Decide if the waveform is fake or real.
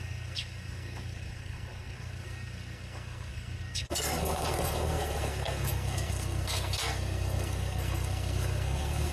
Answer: fake